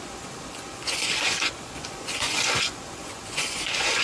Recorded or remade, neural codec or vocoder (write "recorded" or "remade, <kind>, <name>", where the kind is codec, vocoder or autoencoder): remade, vocoder, Vocos